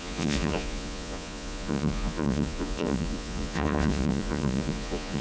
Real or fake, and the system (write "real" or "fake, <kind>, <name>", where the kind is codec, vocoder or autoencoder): fake, vocoder, Vocos